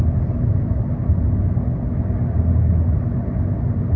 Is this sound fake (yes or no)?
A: no